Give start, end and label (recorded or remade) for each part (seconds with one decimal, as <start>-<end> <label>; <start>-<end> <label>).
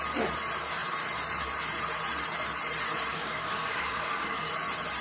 0.0-3.1 recorded; 3.1-4.5 remade; 4.5-5.0 recorded